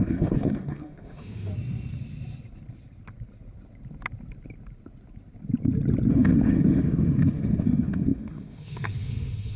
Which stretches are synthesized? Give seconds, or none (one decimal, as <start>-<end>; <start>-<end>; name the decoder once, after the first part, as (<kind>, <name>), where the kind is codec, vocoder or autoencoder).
0.0-1.5 (autoencoder, DAC-VAE); 6.1-9.6